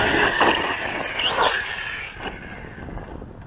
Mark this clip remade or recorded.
recorded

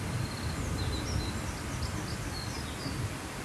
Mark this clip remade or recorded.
recorded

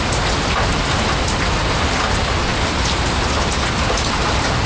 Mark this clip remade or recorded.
recorded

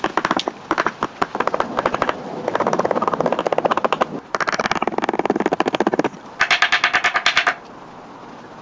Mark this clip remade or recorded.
recorded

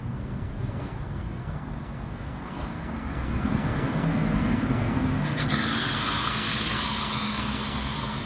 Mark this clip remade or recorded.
remade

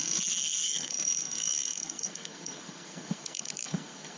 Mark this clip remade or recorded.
remade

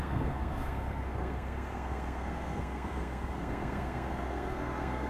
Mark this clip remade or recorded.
remade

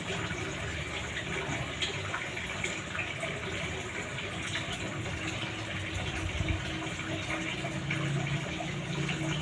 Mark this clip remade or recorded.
recorded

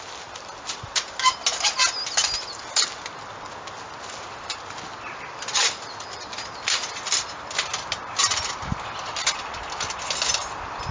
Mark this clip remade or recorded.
recorded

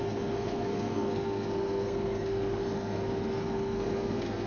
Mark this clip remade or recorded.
remade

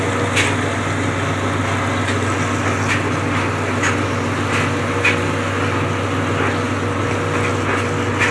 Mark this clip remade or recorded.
recorded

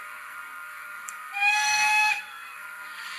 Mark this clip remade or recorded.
remade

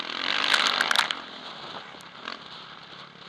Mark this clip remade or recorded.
recorded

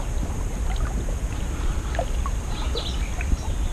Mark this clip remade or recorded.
recorded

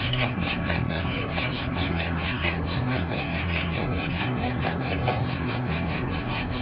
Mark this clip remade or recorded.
remade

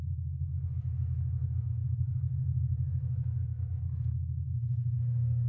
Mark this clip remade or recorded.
remade